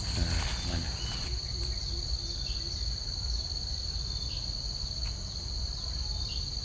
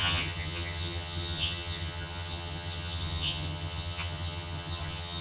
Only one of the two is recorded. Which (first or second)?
first